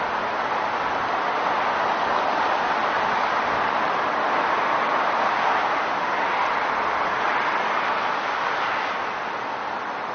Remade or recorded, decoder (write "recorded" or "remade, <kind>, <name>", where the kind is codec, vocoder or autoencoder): recorded